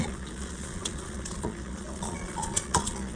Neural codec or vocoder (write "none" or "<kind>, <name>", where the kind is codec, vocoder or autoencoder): vocoder, Vocos